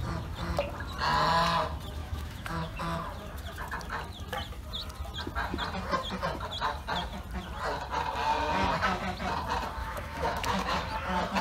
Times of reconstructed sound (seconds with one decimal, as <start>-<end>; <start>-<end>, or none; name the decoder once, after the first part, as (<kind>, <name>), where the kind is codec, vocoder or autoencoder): 2.0-2.8 (autoencoder, DAC-VAE); 9.8-10.8